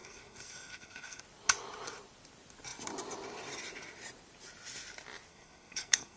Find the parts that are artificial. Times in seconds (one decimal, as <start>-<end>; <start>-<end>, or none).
0.0-1.2; 5.3-6.2